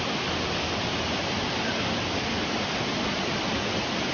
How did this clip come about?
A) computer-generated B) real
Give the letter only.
B